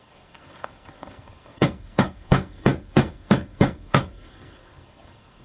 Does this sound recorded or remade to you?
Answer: remade